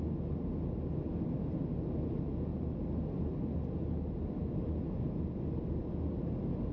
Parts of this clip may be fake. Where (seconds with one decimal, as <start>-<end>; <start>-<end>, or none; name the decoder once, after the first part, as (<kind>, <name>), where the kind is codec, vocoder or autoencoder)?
none